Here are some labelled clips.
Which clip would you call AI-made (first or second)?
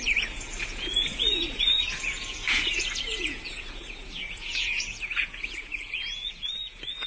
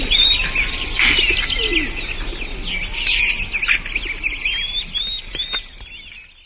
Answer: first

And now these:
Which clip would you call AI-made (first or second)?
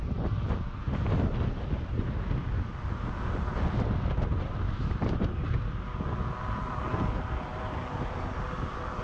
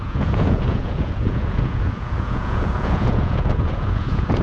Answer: second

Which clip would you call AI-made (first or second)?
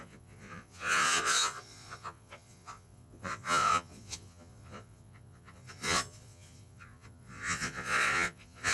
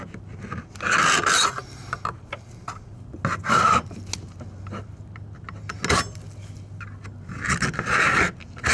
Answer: first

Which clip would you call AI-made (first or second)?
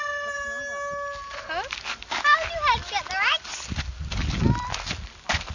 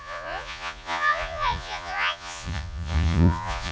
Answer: second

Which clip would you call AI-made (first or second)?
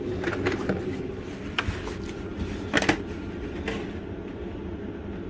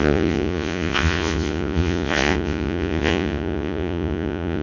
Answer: second